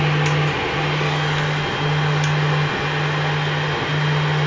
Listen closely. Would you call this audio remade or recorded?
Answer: recorded